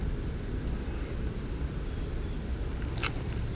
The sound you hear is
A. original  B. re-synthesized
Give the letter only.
A